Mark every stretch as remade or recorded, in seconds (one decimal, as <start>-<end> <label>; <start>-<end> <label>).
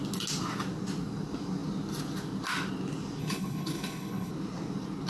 0.0-3.2 recorded; 3.2-4.3 remade; 4.3-5.1 recorded